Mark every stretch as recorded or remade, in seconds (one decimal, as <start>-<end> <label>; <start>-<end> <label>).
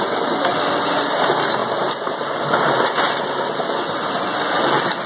0.0-5.1 recorded